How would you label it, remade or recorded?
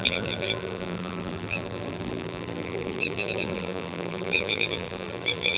remade